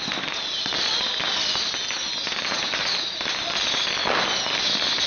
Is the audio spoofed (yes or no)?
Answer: no